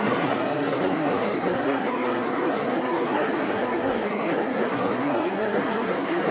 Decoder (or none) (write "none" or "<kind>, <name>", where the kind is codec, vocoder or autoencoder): codec, SNAC